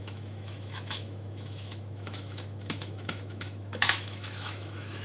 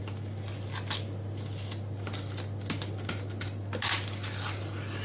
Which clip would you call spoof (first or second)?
first